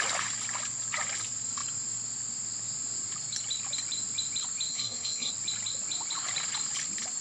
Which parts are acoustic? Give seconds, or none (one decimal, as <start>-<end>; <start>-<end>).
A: 0.0-4.7; 5.3-7.2